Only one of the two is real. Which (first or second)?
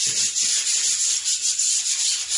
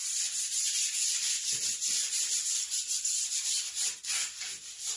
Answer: first